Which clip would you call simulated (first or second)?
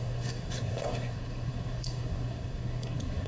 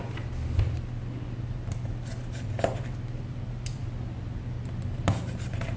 first